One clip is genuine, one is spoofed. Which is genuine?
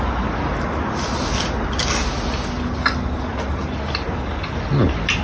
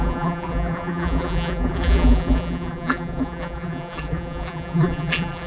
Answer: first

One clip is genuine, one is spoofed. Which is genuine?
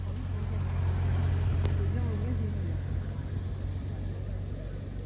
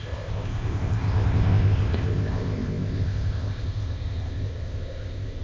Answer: first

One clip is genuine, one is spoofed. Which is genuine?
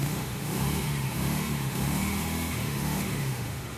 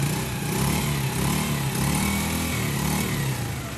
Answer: second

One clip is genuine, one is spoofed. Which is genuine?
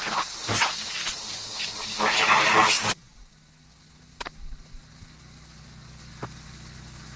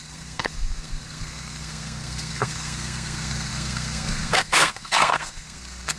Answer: first